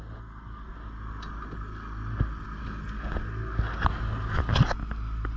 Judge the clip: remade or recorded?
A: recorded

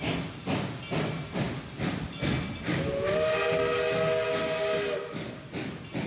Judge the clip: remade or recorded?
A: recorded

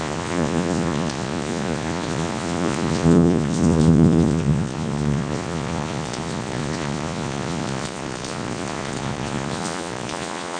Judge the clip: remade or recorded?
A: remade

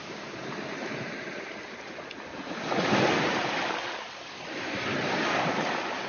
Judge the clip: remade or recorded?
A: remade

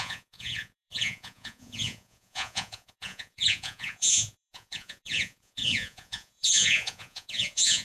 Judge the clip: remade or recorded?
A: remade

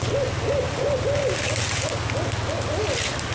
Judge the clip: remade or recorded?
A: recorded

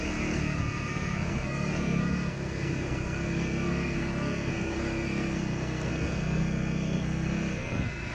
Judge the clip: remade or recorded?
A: remade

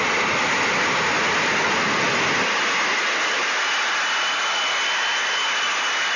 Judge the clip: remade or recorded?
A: recorded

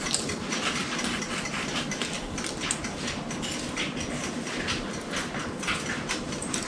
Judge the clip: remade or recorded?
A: recorded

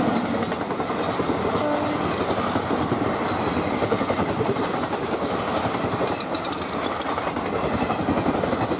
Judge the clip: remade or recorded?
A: recorded